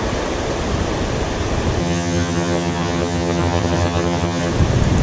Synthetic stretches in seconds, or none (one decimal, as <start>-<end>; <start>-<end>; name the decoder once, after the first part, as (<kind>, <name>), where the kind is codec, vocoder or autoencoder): 1.8-4.5 (vocoder, HiFi-GAN)